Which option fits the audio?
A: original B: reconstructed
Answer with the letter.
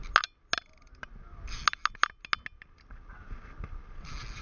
A